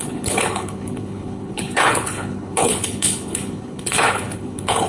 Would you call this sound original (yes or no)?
no